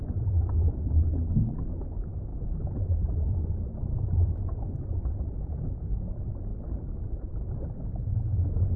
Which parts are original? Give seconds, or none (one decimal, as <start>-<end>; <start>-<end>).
1.1-2.3; 5.6-6.5; 7.5-8.8